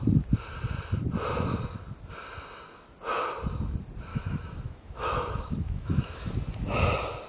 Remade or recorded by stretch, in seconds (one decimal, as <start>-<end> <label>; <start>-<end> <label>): 0.0-4.1 recorded; 4.1-6.3 remade; 6.3-7.3 recorded